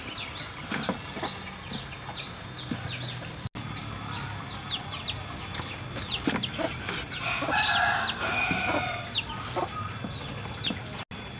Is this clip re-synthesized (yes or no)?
no